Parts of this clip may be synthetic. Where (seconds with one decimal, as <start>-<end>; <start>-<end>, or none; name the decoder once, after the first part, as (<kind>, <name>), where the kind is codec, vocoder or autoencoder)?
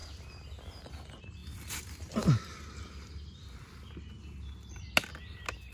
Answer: none